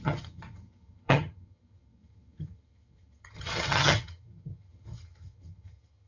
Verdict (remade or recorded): remade